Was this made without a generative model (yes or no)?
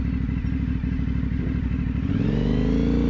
yes